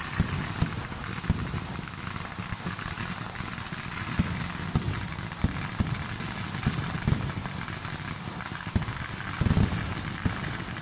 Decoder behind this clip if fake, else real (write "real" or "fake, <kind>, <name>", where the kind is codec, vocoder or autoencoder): real